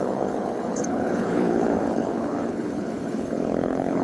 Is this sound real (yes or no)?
no